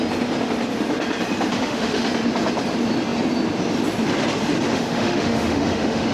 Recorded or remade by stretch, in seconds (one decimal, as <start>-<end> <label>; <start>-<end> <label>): 0.0-1.5 recorded; 1.5-2.1 remade; 2.1-4.7 recorded; 4.7-6.1 remade